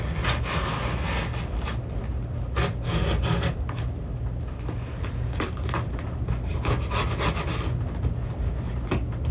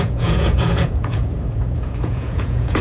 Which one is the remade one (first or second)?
second